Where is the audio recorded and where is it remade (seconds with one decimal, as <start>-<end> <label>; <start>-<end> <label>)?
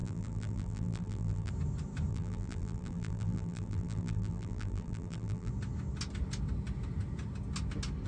0.0-1.5 remade; 1.5-2.1 recorded; 2.1-5.5 remade; 5.5-8.1 recorded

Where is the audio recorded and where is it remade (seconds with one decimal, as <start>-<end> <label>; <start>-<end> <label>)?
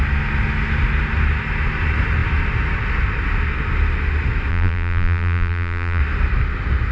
0.0-4.5 recorded; 4.5-6.0 remade; 6.0-6.9 recorded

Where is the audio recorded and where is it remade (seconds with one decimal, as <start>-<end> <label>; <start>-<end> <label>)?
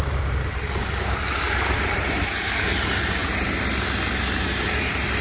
0.0-3.2 remade; 3.2-4.6 recorded; 4.6-5.2 remade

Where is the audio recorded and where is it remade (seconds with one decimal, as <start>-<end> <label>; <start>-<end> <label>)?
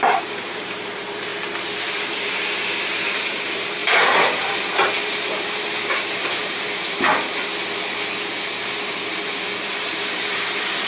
0.0-1.3 remade; 1.3-1.8 recorded; 1.8-7.5 remade; 7.5-9.7 recorded; 9.7-10.9 remade